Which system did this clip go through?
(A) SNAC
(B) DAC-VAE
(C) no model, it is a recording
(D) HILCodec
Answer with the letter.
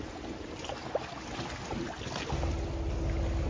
C